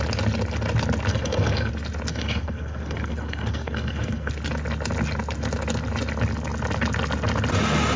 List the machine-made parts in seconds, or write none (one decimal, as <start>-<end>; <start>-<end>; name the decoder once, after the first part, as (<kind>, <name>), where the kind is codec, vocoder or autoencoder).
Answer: 1.1-1.7 (codec, SNAC); 2.1-4.3